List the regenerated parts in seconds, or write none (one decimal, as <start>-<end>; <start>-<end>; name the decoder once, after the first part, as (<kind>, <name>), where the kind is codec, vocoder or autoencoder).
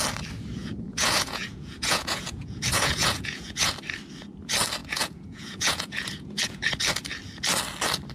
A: 0.6-3.7 (vocoder, Vocos); 4.8-6.7